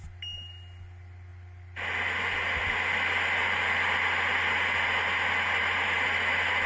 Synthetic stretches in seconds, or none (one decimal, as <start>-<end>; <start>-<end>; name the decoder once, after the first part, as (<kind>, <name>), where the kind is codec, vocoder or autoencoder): none